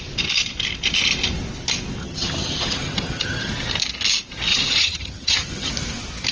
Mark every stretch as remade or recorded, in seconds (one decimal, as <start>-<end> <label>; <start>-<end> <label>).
0.0-2.0 recorded; 2.0-3.5 remade; 3.5-4.5 recorded; 4.5-5.7 remade; 5.7-6.3 recorded